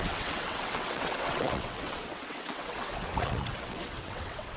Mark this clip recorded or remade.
remade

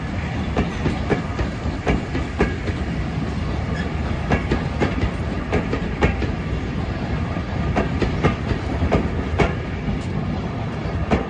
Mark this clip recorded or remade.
remade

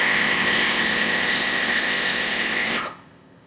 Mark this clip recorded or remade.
remade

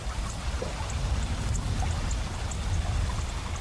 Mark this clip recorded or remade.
recorded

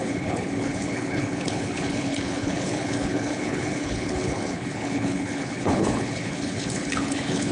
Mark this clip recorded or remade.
remade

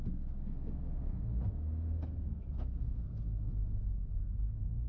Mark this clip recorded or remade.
remade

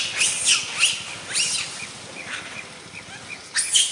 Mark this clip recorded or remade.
recorded